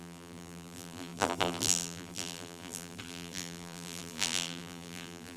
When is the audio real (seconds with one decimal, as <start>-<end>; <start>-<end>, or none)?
none